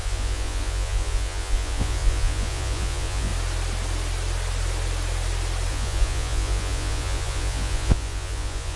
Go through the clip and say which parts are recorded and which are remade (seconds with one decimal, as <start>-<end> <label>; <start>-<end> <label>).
0.0-3.3 remade; 3.3-5.7 recorded; 5.7-8.8 remade